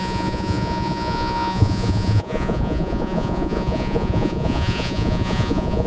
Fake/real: fake